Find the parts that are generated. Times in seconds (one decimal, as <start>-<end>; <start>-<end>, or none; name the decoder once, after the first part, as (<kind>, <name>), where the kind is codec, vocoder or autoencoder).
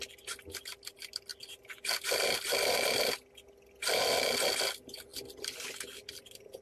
none